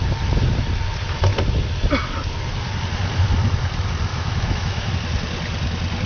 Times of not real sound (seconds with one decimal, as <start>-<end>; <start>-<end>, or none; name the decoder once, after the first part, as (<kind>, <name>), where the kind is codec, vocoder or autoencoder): 4.1-4.9 (autoencoder, DAC-VAE)